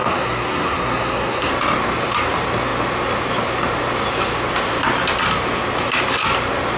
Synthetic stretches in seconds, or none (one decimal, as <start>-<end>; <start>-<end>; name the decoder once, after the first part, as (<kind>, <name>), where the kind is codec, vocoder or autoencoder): 0.0-1.5 (codec, SNAC)